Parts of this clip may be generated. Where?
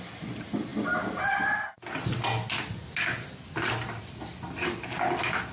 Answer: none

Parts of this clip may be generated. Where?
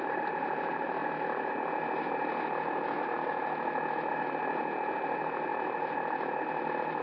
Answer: none